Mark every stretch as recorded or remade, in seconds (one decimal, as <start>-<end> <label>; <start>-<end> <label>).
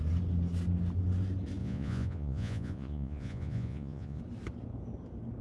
0.0-1.6 recorded; 1.6-4.2 remade; 4.2-5.4 recorded